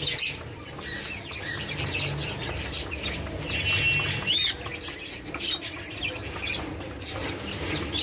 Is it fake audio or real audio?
real